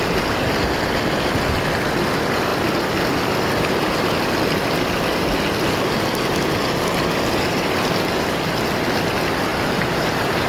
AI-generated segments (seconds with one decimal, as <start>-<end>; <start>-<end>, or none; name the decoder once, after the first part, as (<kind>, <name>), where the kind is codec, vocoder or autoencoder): 9.5-10.5 (vocoder, BigVGAN v2)